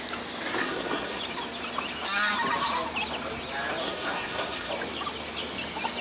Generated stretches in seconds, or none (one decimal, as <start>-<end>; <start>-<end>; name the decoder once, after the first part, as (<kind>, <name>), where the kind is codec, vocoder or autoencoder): 0.6-1.2 (codec, SNAC); 3.8-4.7